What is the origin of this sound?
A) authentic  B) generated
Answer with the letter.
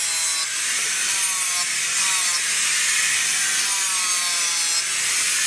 A